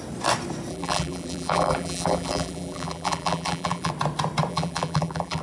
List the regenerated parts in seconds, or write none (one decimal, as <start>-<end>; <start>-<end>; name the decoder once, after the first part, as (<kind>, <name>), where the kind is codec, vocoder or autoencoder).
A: 0.7-3.9 (vocoder, BigVGAN v2); 4.5-5.4